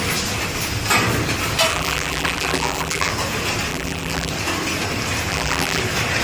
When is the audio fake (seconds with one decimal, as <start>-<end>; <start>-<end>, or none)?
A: 1.7-3.1; 3.7-4.3; 5.3-5.8